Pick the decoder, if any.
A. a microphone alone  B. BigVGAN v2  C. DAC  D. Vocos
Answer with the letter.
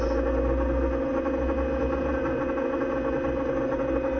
A